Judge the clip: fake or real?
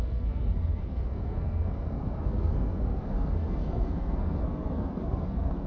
fake